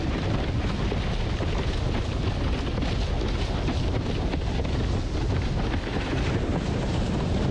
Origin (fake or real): real